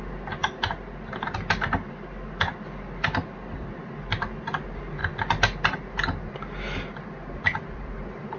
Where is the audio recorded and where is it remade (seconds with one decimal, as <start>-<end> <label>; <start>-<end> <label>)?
0.0-8.4 recorded